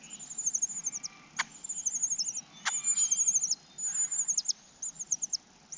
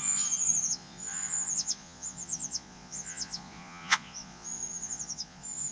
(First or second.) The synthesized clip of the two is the second